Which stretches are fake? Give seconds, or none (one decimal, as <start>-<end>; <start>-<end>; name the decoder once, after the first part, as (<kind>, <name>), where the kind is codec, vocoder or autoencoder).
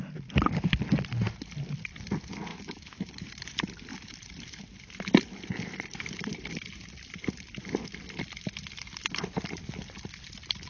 2.5-3.1 (autoencoder, DAC-VAE)